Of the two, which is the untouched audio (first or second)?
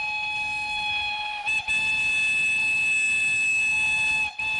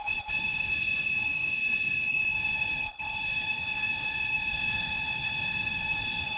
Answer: first